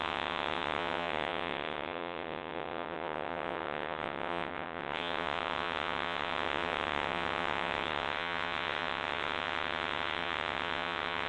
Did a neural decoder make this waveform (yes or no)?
yes